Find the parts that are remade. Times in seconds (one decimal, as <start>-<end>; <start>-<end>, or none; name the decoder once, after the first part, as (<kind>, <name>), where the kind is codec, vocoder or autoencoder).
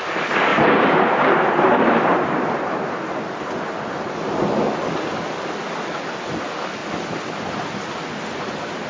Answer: 0.5-3.2 (vocoder, BigVGAN v2)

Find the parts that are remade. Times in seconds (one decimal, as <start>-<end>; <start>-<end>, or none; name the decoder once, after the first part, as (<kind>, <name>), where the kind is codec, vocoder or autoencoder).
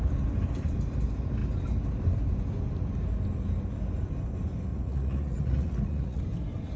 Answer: 4.7-6.2 (vocoder, Vocos)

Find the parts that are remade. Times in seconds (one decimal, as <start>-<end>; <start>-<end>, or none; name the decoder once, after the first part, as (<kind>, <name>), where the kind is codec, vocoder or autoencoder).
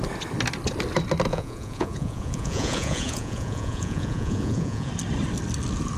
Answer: 1.3-4.9 (vocoder, Vocos)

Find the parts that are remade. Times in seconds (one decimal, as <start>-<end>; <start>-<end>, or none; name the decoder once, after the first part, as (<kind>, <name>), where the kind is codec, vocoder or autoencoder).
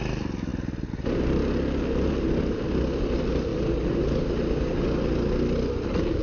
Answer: none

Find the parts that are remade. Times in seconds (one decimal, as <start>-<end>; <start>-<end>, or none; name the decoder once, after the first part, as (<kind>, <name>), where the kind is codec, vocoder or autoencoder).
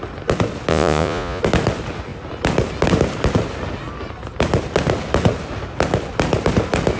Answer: 0.7-1.4 (vocoder, Vocos)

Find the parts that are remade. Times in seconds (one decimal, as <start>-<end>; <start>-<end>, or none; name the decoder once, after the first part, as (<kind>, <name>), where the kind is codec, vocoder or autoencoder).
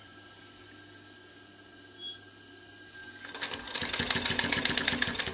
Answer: 0.0-0.6 (vocoder, BigVGAN v2)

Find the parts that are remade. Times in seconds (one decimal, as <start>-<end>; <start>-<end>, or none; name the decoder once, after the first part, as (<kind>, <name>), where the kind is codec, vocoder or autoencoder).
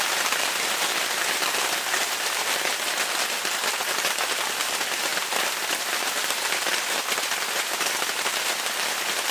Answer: 0.0-0.8 (vocoder, BigVGAN v2); 4.3-9.3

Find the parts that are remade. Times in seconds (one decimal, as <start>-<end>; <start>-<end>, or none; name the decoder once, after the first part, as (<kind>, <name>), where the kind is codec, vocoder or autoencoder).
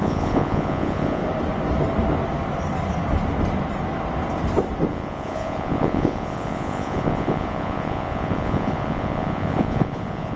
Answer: 0.0-1.2 (vocoder, Vocos); 4.9-10.4